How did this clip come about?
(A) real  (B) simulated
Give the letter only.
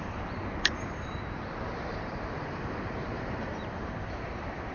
B